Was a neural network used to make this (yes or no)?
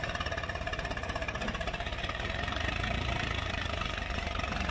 yes